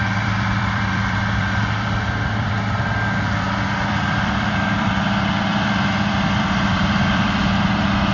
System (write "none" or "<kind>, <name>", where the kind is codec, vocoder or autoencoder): vocoder, BigVGAN v2